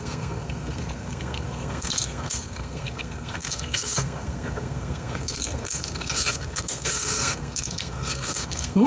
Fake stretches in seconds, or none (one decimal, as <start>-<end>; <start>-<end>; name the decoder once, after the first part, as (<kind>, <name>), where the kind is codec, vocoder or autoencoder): 0.0-8.9 (codec, SNAC)